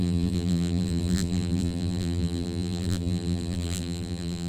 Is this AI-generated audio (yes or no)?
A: yes